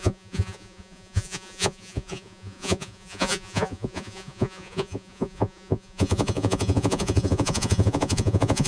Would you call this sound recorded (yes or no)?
no